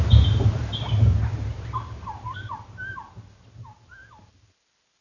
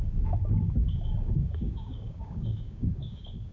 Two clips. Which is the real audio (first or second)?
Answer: first